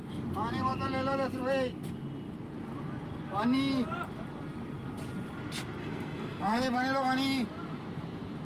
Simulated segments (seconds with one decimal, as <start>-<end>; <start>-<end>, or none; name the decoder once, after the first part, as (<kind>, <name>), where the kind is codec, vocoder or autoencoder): 5.8-6.8 (codec, SNAC)